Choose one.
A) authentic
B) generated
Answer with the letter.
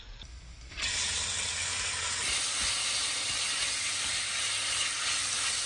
A